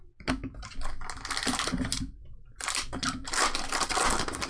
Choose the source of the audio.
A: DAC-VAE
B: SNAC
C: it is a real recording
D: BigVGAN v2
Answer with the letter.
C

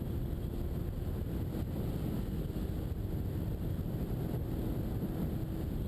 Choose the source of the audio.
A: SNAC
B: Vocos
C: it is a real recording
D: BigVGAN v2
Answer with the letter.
C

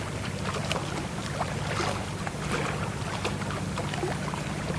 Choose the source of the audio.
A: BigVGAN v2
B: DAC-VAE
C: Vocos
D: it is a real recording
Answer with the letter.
D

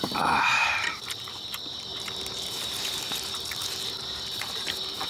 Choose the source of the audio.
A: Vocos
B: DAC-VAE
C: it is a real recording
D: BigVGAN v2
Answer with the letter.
D